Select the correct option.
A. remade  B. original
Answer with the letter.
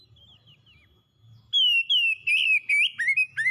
B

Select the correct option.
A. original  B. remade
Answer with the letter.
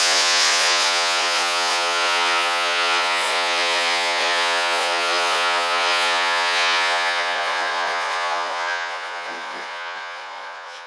B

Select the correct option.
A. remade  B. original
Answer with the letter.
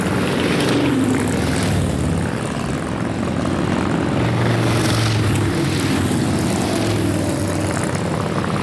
B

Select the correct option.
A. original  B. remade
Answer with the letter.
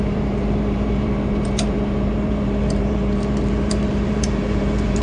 B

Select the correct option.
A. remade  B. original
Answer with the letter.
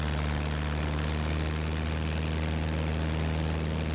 B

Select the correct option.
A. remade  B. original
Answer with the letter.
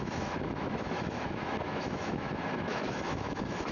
A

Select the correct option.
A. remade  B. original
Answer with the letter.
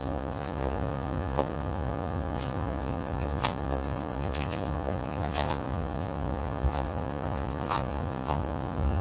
A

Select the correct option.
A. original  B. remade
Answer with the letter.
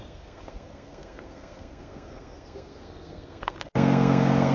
B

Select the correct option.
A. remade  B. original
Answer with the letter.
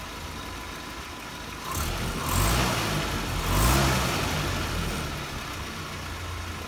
B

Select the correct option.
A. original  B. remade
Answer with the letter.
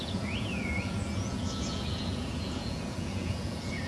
B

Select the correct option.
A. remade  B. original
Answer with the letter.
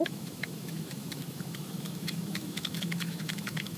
A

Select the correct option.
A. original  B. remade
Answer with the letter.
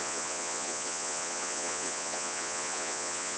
B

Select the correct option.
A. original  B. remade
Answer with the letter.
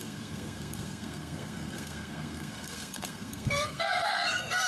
B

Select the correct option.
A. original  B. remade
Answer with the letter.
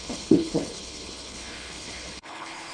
B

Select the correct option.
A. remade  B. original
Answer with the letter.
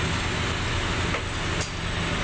B